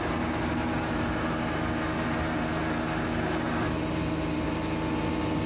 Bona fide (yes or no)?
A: yes